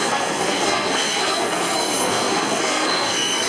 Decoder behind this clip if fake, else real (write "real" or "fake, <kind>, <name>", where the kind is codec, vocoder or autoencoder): fake, codec, SNAC